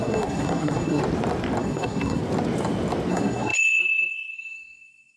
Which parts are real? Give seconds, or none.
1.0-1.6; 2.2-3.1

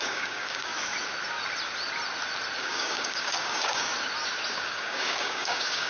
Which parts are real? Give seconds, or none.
0.7-2.6; 3.9-4.5

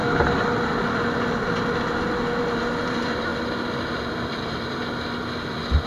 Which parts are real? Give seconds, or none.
0.0-2.4; 3.3-4.1; 4.8-5.9